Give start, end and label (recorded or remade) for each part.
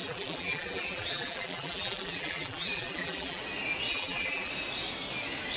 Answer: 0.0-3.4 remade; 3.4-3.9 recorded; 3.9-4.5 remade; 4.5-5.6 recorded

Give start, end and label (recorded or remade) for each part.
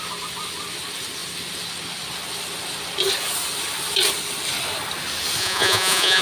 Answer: 0.0-5.4 recorded; 5.4-6.2 remade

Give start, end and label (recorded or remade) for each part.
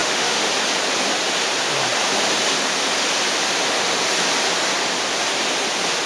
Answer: 0.0-0.5 remade; 0.5-6.1 recorded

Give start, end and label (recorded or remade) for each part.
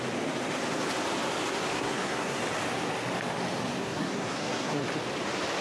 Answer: 0.0-1.7 recorded; 1.7-2.4 remade; 2.4-3.8 recorded; 3.8-4.8 remade; 4.8-5.6 recorded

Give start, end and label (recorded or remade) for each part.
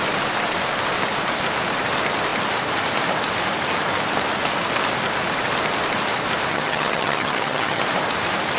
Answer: 0.0-6.5 recorded; 6.5-7.8 remade; 7.8-8.6 recorded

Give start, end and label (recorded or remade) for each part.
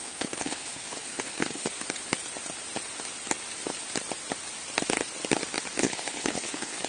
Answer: 0.0-1.7 remade; 1.7-5.8 recorded; 5.8-6.9 remade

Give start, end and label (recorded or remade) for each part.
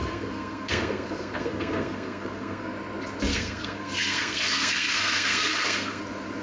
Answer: 0.0-2.7 remade; 2.7-3.3 recorded; 3.3-6.0 remade; 6.0-6.4 recorded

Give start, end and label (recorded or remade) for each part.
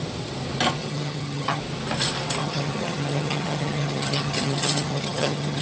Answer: 0.0-0.8 recorded; 0.8-1.6 remade; 1.6-2.4 recorded; 2.4-5.6 remade